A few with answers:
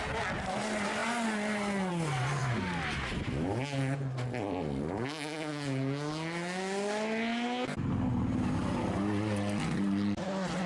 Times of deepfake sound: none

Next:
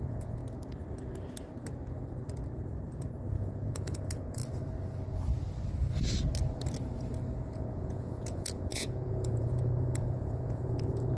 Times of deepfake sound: 0.0-0.4; 3.3-4.4; 7.5-11.2

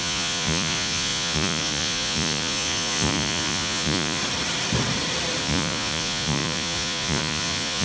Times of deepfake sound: 0.0-4.2; 5.4-7.8

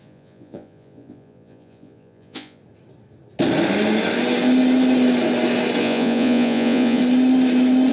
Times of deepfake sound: 0.0-2.6; 5.8-7.0

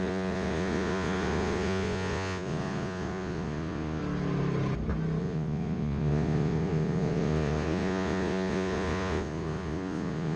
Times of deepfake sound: 0.0-4.0; 5.2-10.4

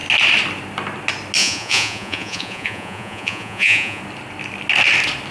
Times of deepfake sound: 1.4-4.0

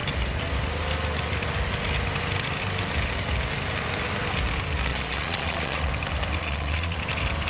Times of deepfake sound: 4.9-5.9; 6.4-7.0